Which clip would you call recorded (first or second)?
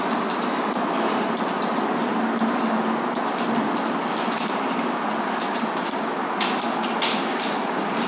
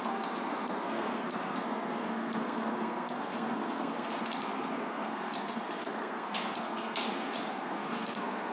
first